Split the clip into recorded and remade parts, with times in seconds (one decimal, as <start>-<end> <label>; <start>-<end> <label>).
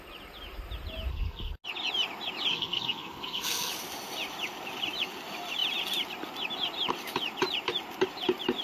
0.0-1.1 recorded; 1.1-1.6 remade; 1.6-2.5 recorded; 2.5-3.7 remade; 3.7-8.6 recorded